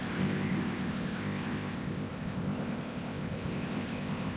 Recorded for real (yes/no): no